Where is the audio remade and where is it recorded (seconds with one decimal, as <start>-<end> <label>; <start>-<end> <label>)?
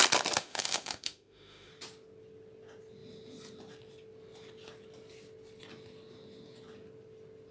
0.0-0.4 recorded; 0.4-1.7 remade; 1.7-7.5 recorded